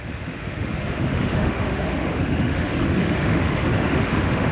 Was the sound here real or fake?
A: fake